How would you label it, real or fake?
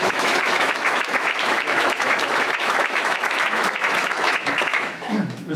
fake